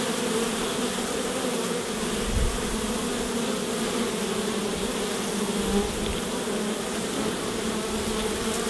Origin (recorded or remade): recorded